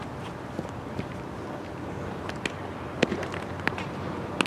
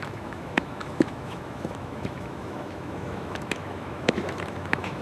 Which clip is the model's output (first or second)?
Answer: second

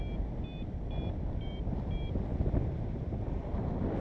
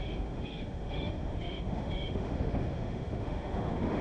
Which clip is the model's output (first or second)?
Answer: second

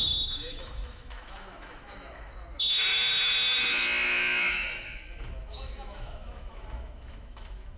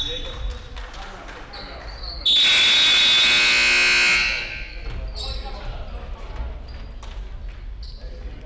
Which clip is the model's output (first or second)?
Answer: first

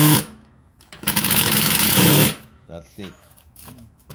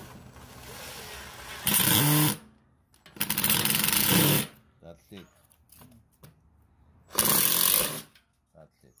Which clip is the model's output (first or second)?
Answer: first